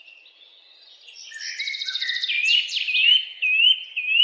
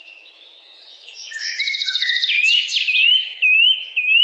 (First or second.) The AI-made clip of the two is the second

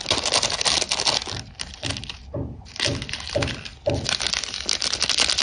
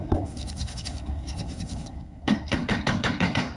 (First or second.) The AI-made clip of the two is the second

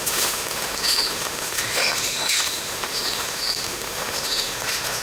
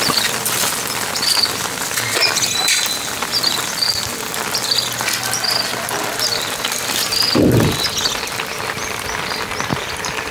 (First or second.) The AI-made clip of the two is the first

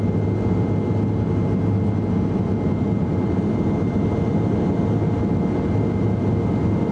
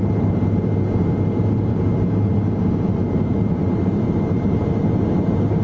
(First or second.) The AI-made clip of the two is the second